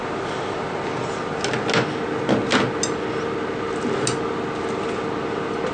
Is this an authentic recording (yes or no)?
yes